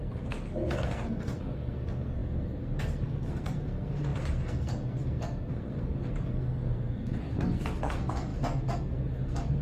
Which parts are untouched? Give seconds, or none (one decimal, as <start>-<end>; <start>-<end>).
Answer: none